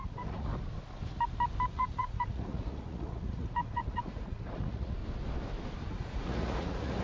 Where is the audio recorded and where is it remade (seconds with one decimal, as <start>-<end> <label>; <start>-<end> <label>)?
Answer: 0.0-0.5 remade; 0.5-1.7 recorded; 1.7-5.0 remade; 5.0-5.9 recorded; 5.9-7.0 remade